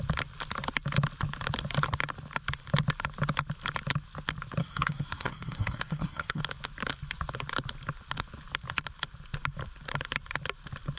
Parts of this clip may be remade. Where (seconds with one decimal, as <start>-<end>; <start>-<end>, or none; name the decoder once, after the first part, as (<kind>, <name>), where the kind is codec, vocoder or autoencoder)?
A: 4.6-6.4 (codec, SNAC)